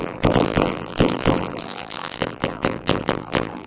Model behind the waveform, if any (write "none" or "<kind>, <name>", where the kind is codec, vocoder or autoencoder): vocoder, BigVGAN v2